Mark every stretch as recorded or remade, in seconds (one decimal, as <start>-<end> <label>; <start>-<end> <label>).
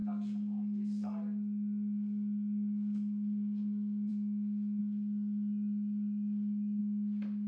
0.0-4.1 remade; 4.1-4.8 recorded; 4.8-6.8 remade; 6.8-7.5 recorded